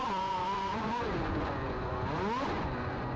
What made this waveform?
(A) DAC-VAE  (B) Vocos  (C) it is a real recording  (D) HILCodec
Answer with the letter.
B